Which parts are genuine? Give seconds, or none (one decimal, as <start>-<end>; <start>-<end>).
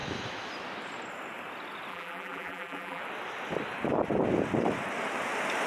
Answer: 0.0-1.9; 3.0-5.7